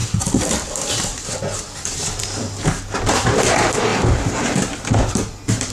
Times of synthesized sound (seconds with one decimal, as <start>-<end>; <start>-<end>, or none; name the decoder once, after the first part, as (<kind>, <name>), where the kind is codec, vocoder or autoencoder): 0.0-1.8 (vocoder, BigVGAN v2)